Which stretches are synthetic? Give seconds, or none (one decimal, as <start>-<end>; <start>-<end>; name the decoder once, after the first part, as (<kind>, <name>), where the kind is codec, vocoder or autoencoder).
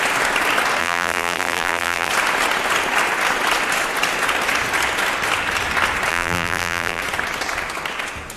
0.8-2.1 (vocoder, BigVGAN v2); 6.1-7.0